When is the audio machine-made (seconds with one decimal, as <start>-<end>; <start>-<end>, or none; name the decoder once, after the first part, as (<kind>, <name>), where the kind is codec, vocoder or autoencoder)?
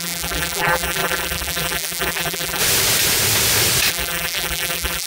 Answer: 0.0-2.6 (vocoder, BigVGAN v2); 3.9-5.1